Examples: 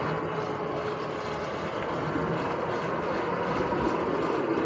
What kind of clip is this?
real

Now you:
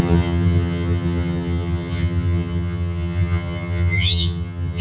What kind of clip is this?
fake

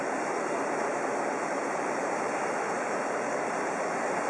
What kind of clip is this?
fake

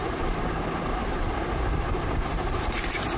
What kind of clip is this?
fake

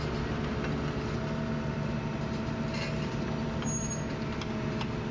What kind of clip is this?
real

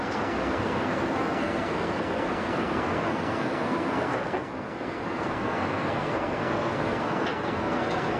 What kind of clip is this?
fake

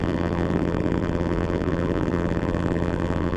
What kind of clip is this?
fake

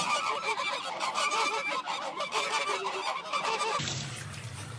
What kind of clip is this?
fake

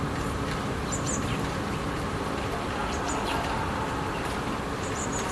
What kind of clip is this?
fake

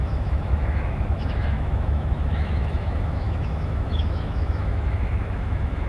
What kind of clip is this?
fake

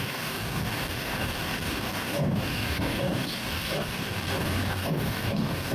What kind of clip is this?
fake